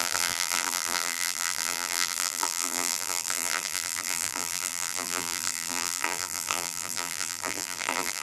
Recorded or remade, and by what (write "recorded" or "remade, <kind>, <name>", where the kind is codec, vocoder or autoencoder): remade, vocoder, BigVGAN v2